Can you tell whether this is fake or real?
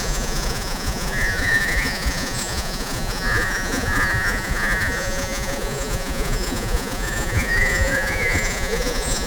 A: fake